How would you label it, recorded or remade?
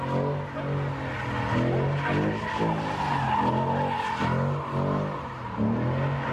recorded